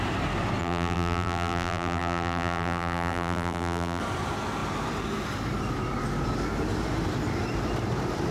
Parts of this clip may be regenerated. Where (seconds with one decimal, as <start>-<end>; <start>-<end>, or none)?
0.6-4.0